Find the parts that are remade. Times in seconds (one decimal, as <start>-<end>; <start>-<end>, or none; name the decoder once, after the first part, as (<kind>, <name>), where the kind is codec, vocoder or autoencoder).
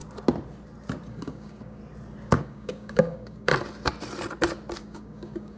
1.1-1.8 (codec, DAC); 2.4-3.5; 4.8-5.6